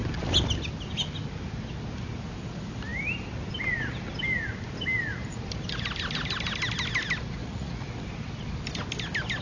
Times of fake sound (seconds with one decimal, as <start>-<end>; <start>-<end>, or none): 7.4-7.9